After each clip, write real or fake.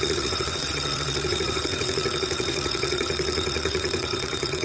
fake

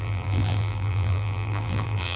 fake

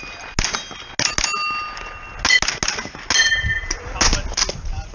real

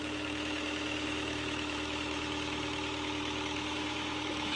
fake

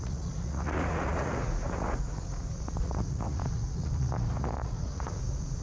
fake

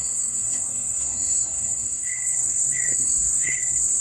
fake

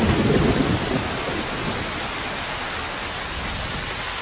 real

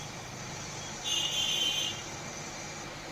real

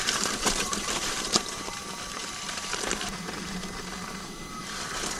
fake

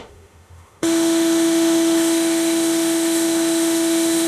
fake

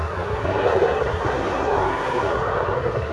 fake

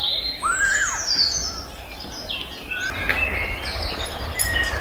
real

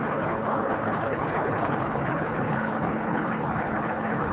fake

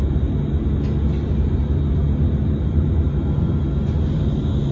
real